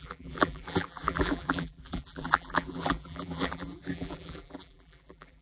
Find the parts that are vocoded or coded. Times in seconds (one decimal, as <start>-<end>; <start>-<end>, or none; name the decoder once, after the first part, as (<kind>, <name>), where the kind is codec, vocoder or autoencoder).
0.0-5.4 (vocoder, BigVGAN v2)